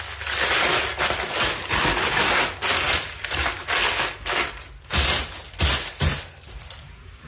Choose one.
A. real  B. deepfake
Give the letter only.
A